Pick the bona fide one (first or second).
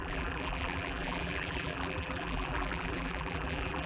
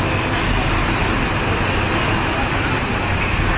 second